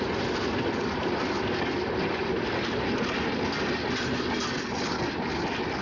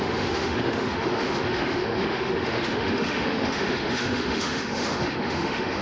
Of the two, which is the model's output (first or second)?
second